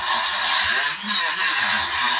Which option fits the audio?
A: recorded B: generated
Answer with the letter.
A